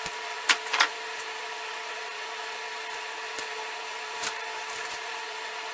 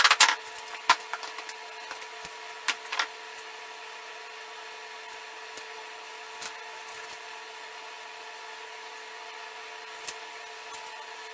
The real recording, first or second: second